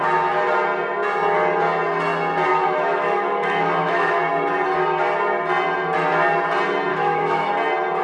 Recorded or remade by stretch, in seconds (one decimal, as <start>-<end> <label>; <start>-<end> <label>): 0.0-2.5 recorded; 2.5-4.2 remade; 4.2-6.9 recorded; 6.9-7.5 remade; 7.5-8.0 recorded